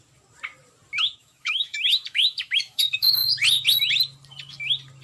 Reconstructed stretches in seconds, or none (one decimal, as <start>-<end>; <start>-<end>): 1.2-3.3